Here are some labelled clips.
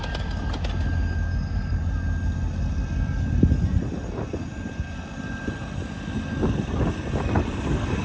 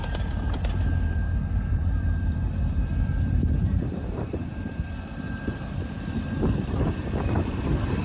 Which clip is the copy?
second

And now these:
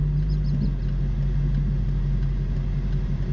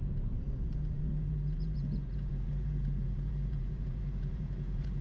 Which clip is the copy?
second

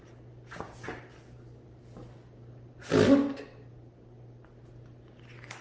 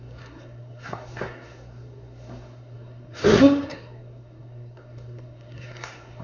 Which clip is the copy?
second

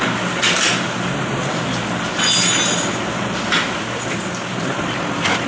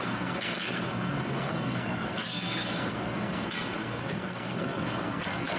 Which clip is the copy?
second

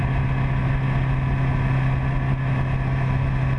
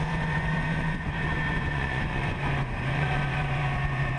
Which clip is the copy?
second